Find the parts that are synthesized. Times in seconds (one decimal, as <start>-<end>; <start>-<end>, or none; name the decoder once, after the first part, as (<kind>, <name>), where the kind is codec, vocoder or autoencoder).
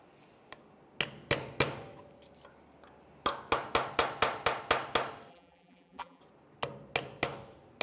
5.3-6.2 (vocoder, BigVGAN v2)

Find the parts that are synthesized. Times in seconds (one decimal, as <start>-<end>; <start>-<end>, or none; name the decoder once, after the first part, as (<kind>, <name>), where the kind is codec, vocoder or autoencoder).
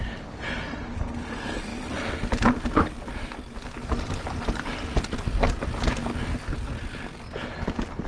none